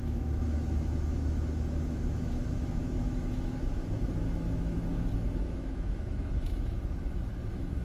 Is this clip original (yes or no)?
no